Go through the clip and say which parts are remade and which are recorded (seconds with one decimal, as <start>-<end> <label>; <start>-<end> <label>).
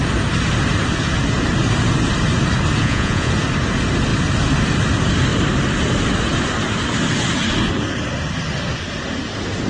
0.0-2.8 recorded; 2.8-3.3 remade; 3.3-9.7 recorded